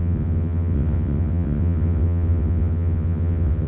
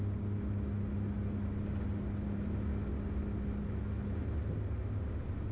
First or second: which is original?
second